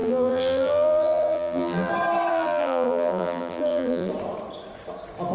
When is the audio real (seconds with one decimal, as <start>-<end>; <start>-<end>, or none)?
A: 1.9-2.3; 4.1-5.3